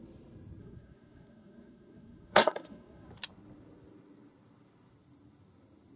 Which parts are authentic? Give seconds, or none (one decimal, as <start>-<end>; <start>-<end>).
0.0-0.6; 3.1-6.0